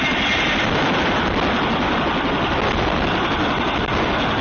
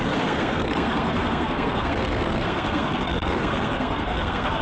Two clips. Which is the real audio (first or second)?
first